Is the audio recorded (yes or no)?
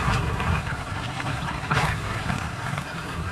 no